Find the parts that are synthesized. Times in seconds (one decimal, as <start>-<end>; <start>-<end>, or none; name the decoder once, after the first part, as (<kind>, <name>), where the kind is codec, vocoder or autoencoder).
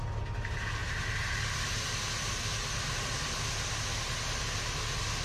none